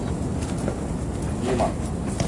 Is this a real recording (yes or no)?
yes